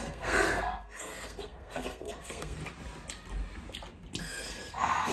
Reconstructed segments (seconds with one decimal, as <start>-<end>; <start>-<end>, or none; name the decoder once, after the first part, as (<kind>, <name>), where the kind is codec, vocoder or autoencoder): 0.0-2.6 (codec, SNAC); 4.2-5.1